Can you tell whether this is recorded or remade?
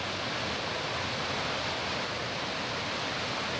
recorded